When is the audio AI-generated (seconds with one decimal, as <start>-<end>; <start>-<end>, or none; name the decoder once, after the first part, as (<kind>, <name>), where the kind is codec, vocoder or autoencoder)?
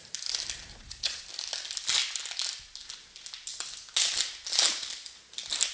0.7-1.2 (vocoder, Vocos)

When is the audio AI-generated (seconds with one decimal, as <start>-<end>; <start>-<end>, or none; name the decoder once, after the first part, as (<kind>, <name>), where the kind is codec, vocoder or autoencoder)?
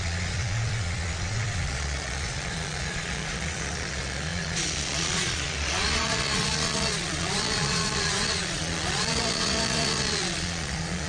0.0-11.1 (vocoder, Vocos)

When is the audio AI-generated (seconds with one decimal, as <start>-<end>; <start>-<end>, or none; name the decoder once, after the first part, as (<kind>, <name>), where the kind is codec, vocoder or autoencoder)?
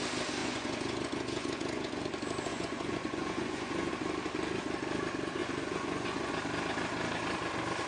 0.4-2.0 (vocoder, Vocos); 2.5-3.9; 5.4-6.3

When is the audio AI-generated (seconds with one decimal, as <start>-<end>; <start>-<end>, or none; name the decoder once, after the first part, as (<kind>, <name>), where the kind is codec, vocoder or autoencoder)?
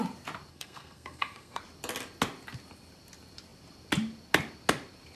0.5-1.6 (codec, SNAC)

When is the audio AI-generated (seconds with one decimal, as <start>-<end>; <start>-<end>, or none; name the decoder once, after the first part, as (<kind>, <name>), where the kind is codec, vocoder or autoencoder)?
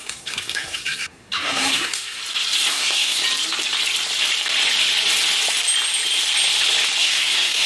0.0-2.2 (codec, SNAC); 2.7-3.2; 7.0-7.7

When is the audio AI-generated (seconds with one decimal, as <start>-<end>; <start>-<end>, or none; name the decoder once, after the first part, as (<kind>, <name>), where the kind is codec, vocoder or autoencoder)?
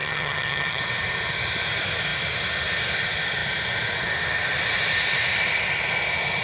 0.0-0.8 (vocoder, HiFi-GAN)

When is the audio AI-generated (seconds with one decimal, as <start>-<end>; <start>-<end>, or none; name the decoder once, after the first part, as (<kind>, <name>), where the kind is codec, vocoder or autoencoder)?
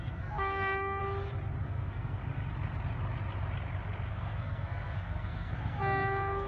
0.0-1.0 (codec, SNAC); 1.6-2.2; 4.1-6.5